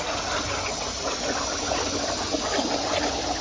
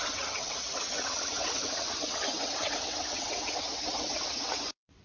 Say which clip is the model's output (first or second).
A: second